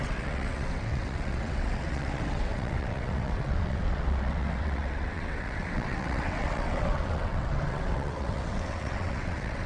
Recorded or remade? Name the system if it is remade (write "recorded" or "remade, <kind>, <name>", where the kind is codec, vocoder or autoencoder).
remade, vocoder, WaveNeXt